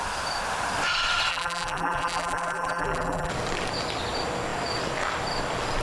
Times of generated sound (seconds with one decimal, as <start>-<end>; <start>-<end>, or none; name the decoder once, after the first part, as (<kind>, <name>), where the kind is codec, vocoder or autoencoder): 1.3-3.3 (vocoder, BigVGAN v2)